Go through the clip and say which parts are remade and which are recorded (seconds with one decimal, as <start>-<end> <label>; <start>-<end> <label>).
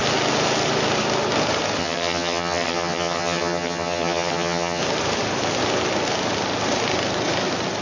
0.0-1.8 recorded; 1.8-4.8 remade; 4.8-7.8 recorded